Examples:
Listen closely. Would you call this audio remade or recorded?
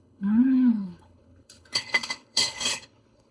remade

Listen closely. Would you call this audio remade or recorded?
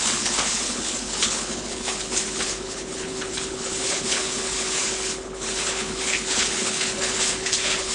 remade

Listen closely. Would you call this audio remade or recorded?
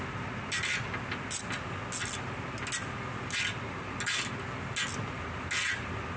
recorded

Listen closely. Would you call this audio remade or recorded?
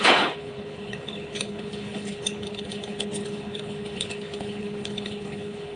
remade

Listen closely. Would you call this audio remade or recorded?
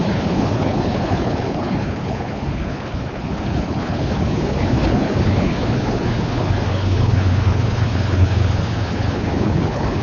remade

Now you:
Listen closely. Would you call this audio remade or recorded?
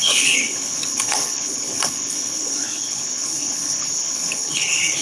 remade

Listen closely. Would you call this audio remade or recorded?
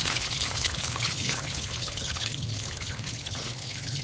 remade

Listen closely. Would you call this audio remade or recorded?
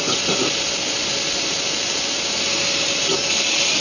recorded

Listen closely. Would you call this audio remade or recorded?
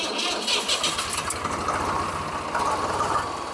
recorded